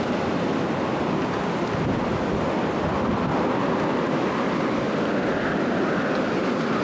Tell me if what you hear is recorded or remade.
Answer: recorded